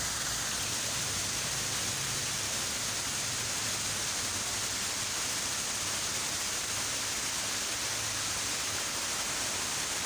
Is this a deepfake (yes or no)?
no